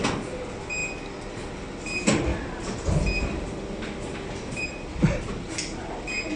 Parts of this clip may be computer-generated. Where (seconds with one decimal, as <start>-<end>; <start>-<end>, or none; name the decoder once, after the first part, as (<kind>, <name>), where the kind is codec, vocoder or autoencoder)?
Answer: none